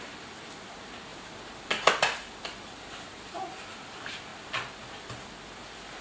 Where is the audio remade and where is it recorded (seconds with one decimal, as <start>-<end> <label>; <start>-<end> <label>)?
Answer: 0.0-6.0 recorded